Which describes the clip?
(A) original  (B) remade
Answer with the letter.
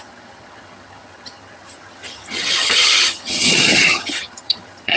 B